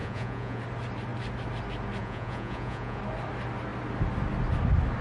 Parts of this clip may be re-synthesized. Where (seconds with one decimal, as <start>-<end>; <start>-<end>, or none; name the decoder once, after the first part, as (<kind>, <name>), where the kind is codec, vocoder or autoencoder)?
0.0-0.6 (vocoder, Vocos); 2.0-3.0